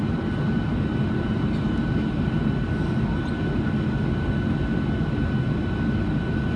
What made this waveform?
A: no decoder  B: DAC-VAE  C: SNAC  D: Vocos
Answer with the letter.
A